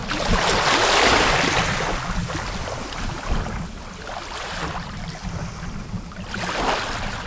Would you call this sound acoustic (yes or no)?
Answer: yes